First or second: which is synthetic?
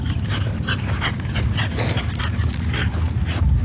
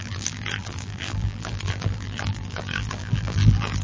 second